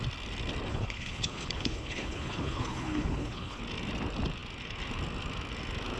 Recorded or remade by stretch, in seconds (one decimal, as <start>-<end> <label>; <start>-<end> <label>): 0.0-0.7 recorded; 0.7-3.6 remade; 3.6-6.0 recorded